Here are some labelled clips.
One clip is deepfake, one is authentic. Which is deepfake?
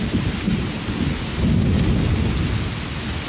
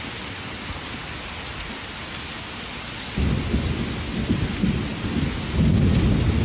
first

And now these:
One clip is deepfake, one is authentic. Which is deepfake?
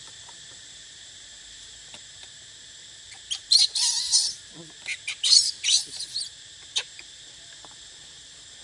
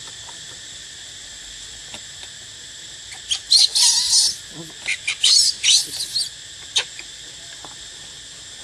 first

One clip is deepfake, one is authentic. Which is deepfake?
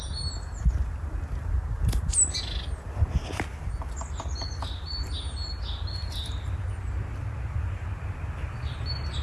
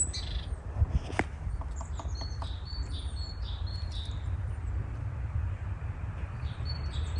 second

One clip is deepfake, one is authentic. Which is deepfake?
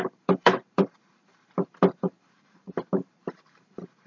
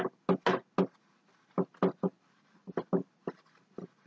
first